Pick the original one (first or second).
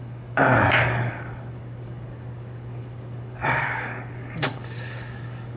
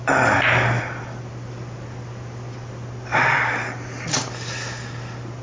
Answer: second